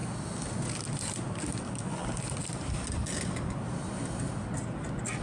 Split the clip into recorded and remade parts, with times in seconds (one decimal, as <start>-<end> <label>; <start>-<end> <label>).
0.0-5.2 recorded